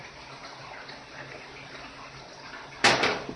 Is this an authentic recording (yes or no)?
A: yes